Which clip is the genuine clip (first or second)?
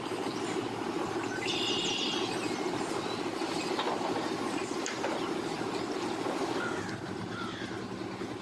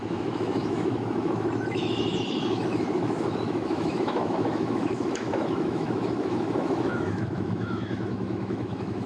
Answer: first